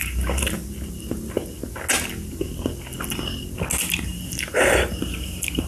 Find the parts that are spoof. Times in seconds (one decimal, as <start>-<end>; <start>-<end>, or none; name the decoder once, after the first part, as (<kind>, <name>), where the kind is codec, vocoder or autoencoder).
0.0-0.6 (vocoder, BigVGAN v2); 4.0-5.7